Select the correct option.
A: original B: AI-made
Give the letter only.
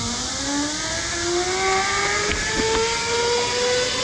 A